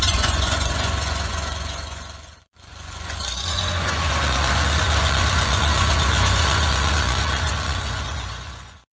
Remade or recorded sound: remade